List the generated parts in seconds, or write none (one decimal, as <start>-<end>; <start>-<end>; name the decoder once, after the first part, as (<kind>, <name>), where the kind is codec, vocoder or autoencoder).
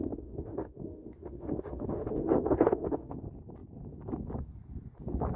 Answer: 0.0-3.2 (autoencoder, DAC-VAE)